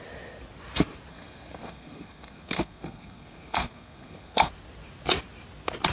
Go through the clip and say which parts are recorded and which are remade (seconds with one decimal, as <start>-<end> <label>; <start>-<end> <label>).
0.0-1.1 recorded; 1.1-4.5 remade; 4.5-5.9 recorded